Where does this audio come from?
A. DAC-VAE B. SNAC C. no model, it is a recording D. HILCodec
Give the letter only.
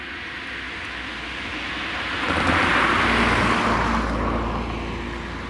C